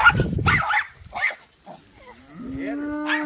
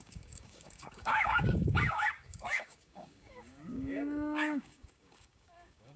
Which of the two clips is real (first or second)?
first